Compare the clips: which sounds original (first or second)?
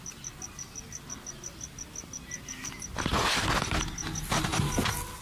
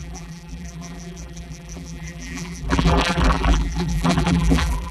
first